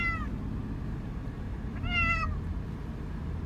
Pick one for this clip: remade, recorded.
recorded